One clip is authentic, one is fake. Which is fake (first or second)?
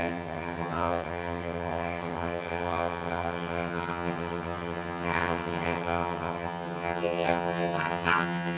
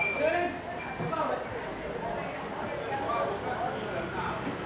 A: first